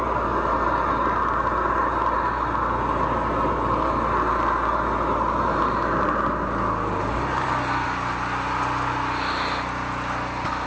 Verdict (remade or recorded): recorded